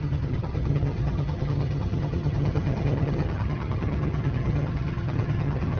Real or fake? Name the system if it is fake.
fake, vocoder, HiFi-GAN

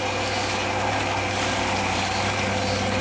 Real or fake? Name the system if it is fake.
real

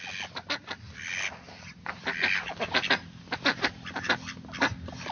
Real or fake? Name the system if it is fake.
real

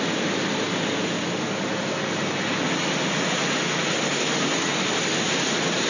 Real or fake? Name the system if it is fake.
real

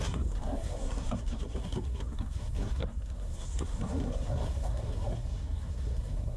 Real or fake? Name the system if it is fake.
fake, codec, SNAC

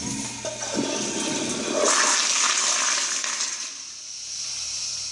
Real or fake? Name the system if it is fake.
real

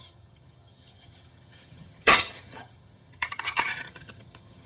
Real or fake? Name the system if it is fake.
fake, vocoder, HiFi-GAN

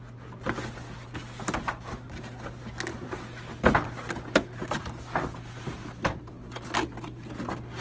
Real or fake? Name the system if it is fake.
real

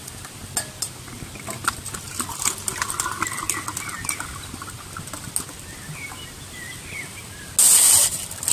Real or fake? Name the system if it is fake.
real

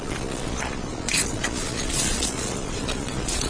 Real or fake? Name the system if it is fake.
fake, vocoder, Vocos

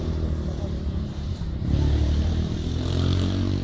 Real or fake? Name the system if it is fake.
fake, vocoder, BigVGAN v2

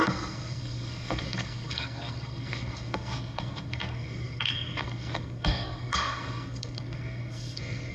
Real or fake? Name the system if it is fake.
fake, codec, SNAC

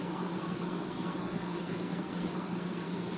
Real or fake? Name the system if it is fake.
fake, codec, SNAC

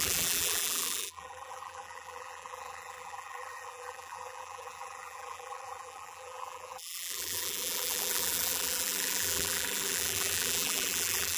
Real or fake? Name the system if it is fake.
fake, vocoder, BigVGAN v2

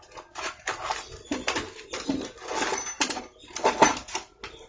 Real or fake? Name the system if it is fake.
real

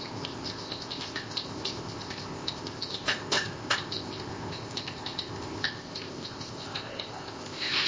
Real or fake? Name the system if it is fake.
fake, codec, ZipCodec